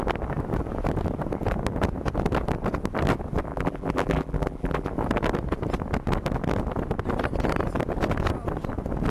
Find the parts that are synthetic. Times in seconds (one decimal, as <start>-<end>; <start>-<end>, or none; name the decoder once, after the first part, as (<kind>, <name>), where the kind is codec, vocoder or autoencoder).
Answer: 3.5-4.9 (vocoder, BigVGAN v2)